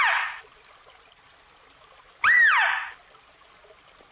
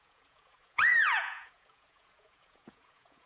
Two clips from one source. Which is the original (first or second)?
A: first